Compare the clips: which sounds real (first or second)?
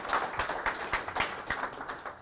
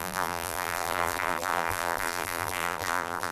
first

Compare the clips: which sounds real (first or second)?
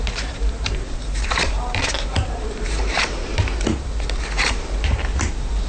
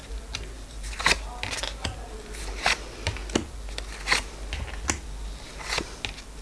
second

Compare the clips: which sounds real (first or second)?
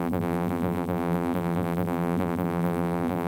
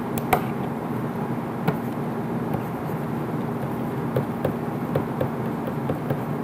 second